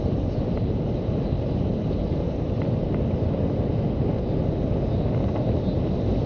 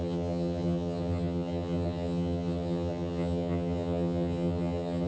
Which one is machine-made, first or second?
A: second